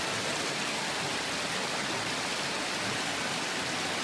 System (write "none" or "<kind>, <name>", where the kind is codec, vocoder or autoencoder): none